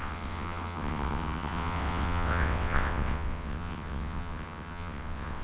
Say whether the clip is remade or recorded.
remade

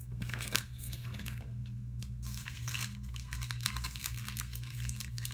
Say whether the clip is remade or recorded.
remade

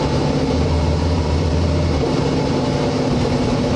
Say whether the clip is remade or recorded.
remade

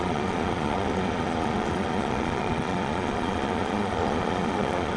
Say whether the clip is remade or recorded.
remade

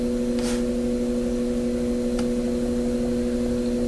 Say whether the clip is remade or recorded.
recorded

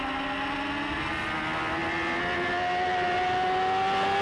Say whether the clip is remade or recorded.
recorded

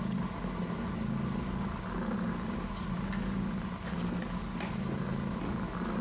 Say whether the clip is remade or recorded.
recorded